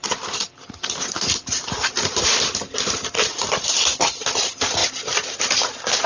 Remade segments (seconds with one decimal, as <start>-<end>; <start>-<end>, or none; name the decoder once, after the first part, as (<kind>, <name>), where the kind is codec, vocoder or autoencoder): 0.0-6.1 (vocoder, BigVGAN v2)